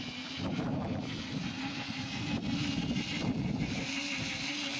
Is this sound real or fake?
real